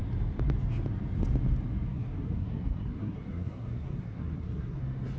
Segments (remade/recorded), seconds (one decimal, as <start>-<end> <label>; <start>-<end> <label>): 0.0-1.9 recorded; 1.9-4.8 remade; 4.8-5.2 recorded